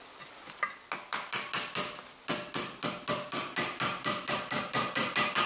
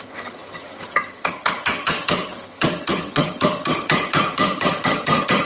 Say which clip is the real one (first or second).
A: first